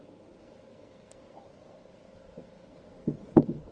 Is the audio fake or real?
fake